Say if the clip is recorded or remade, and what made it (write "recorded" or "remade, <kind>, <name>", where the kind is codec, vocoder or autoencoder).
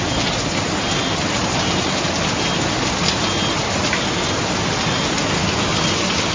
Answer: recorded